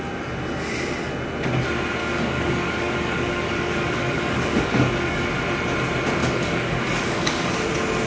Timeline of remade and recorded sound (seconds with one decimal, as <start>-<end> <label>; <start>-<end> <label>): 0.0-2.0 recorded; 2.0-5.3 remade; 5.3-6.2 recorded; 6.2-7.5 remade; 7.5-8.1 recorded

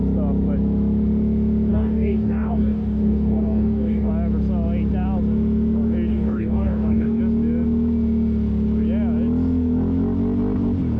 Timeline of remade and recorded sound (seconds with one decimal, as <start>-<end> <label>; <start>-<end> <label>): 0.0-1.7 recorded; 1.7-4.1 remade; 4.1-6.1 recorded; 6.1-7.2 remade; 7.2-11.0 recorded

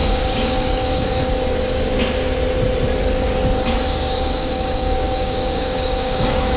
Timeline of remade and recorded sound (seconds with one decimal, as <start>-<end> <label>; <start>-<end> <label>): 0.0-1.2 remade; 1.2-4.0 recorded; 4.0-6.6 remade